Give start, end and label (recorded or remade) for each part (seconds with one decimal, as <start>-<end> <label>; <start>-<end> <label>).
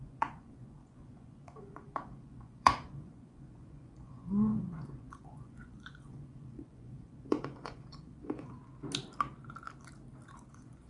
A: 0.0-8.6 remade; 8.6-10.5 recorded; 10.5-10.9 remade